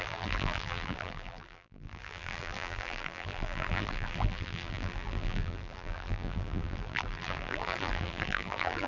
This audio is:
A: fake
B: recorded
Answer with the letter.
A